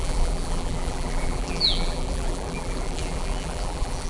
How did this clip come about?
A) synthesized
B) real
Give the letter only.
A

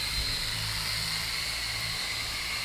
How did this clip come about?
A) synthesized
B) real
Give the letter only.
A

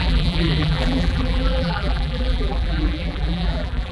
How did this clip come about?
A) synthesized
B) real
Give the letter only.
A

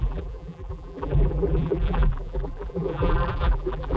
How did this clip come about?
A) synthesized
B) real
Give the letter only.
A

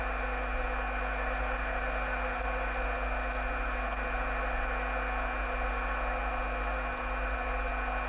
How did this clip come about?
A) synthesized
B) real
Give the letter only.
B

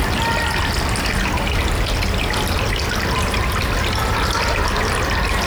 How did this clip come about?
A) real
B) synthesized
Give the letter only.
A